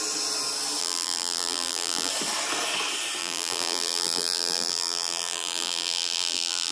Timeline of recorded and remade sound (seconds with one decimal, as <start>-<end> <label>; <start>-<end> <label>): 0.0-0.8 recorded; 0.8-2.1 remade; 2.1-3.2 recorded; 3.2-6.7 remade